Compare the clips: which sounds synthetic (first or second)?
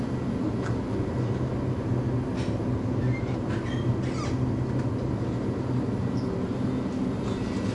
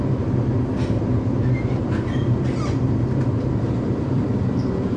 second